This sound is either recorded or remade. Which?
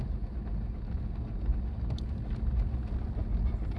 recorded